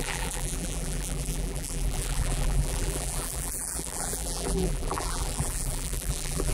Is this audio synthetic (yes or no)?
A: yes